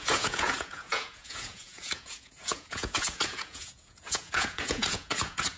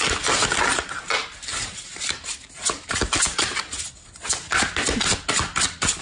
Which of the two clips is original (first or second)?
second